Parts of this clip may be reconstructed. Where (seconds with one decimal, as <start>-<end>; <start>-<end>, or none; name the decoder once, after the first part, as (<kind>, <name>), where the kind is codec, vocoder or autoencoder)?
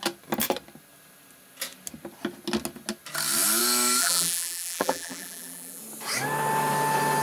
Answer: 4.0-5.8 (vocoder, BigVGAN v2)